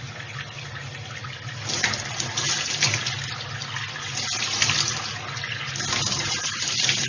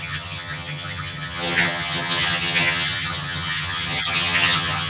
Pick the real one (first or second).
first